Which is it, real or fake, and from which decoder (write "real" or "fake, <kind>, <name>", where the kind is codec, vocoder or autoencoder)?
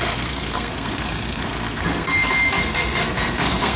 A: fake, codec, SNAC